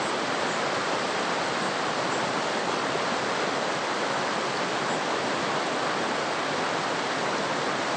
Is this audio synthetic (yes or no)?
no